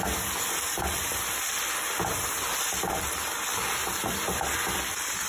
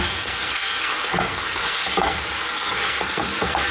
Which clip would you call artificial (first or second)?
second